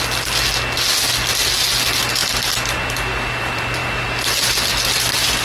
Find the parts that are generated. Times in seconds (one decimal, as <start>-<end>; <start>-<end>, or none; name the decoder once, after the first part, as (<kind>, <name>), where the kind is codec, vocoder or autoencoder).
none